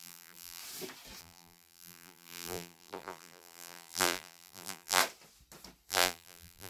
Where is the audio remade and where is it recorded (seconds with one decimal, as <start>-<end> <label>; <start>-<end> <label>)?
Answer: 0.0-0.6 remade; 0.6-1.2 recorded; 1.2-5.0 remade; 5.0-5.9 recorded; 5.9-6.7 remade